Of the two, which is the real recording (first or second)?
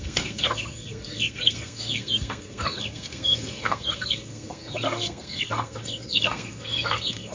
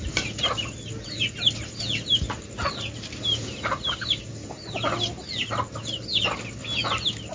second